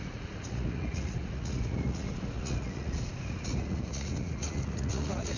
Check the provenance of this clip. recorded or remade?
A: remade